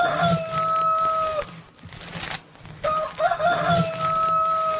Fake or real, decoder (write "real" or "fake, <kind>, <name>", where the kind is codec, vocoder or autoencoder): real